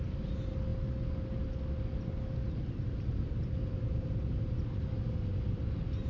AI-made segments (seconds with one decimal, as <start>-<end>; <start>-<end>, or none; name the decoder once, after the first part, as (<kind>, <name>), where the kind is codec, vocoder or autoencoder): none

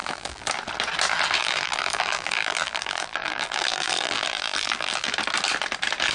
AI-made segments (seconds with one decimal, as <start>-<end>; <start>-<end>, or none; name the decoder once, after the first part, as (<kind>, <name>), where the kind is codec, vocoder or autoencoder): 0.0-0.5 (vocoder, BigVGAN v2); 1.4-5.1

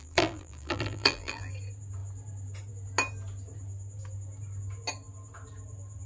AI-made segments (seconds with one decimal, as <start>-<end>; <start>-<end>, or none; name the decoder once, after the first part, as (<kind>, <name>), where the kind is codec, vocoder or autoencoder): 0.0-1.5 (vocoder, BigVGAN v2)

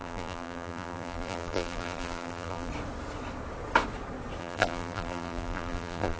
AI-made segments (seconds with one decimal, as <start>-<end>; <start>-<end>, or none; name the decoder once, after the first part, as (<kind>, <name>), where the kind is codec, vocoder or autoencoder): 0.0-2.7 (vocoder, BigVGAN v2); 4.4-6.2